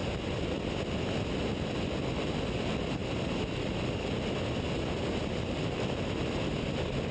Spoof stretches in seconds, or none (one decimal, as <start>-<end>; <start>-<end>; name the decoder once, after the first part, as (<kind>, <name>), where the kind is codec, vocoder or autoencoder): none